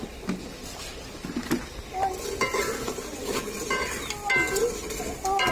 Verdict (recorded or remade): recorded